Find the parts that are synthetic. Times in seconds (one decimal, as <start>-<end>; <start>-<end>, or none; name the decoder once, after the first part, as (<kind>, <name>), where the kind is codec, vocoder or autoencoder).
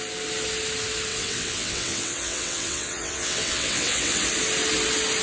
1.1-4.2 (vocoder, WaveNeXt)